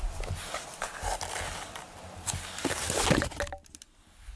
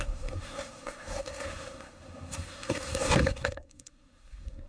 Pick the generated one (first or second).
second